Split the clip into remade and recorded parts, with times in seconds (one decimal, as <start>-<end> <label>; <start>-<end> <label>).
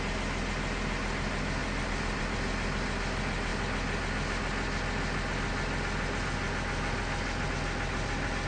0.0-8.5 recorded